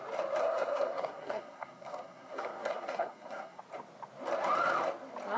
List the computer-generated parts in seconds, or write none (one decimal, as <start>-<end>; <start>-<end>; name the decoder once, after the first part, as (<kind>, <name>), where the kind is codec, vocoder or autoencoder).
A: 0.4-3.6 (codec, SNAC)